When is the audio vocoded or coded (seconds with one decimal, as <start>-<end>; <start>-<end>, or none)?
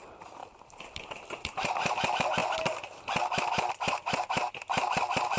0.4-1.3